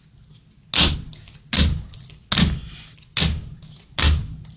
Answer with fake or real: real